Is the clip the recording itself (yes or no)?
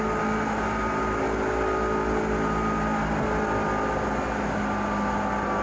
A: yes